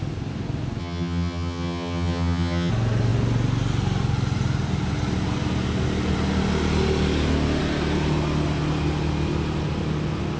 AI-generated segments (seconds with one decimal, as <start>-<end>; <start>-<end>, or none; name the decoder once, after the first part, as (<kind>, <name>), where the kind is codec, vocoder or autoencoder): 0.8-2.7 (vocoder, HiFi-GAN)